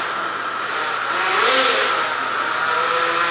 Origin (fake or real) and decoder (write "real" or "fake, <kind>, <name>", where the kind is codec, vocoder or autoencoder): real